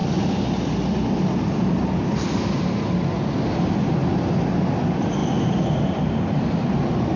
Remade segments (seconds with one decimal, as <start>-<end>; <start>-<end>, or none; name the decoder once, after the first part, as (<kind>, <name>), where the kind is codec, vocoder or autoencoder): 5.2-6.7 (vocoder, BigVGAN v2)